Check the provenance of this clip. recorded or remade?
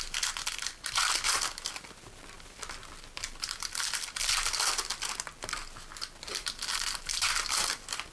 recorded